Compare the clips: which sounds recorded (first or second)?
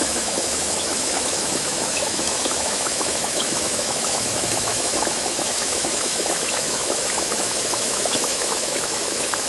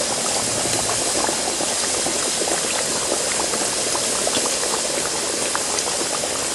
second